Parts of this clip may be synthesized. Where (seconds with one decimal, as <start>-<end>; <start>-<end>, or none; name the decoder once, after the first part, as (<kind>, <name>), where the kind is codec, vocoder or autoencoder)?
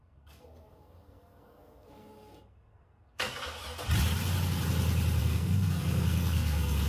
0.0-3.6 (codec, SNAC); 5.2-6.9